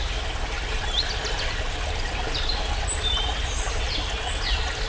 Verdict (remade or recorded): recorded